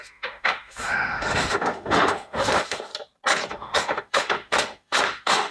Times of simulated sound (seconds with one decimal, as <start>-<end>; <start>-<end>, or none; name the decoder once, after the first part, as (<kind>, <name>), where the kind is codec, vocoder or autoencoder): 0.0-2.9 (autoencoder, DAC-VAE); 3.5-5.5